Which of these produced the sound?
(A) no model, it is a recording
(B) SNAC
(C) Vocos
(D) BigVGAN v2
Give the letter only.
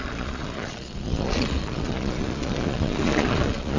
C